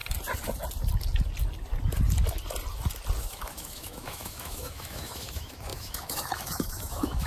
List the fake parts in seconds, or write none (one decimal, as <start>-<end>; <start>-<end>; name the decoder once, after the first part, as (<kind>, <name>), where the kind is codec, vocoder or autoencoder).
3.2-7.3 (autoencoder, DAC-VAE)